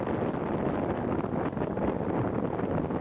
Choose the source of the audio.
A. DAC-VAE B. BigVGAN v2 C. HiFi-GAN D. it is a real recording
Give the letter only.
D